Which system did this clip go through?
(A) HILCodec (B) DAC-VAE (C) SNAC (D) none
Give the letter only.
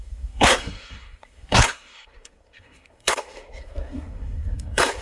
C